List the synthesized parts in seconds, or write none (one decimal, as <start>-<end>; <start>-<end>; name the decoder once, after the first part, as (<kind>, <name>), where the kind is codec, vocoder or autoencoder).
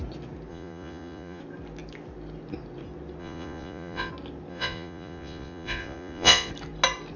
0.5-1.4 (vocoder, Vocos); 3.2-4.1; 4.5-6.5